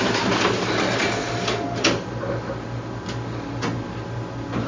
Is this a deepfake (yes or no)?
no